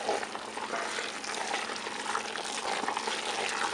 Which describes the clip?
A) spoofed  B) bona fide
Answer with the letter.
B